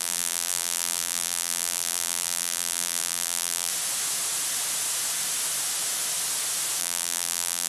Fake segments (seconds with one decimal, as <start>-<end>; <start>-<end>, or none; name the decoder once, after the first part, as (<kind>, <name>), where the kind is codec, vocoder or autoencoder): 0.0-3.7 (vocoder, BigVGAN v2); 6.8-7.7